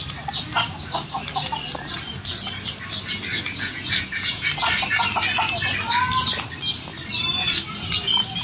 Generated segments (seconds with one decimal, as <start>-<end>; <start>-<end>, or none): 3.3-4.5